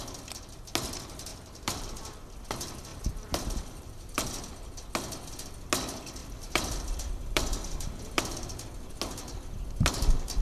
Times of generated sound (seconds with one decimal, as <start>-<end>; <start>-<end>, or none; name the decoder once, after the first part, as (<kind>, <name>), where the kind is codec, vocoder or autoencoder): 1.3-2.3 (vocoder, BigVGAN v2); 2.9-4.4; 6.2-8.2